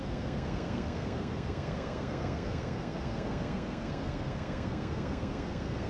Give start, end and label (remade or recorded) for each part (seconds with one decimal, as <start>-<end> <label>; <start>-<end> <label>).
0.0-5.9 remade